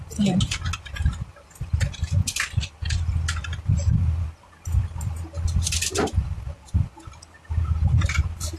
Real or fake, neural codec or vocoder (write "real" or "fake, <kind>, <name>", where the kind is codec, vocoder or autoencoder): real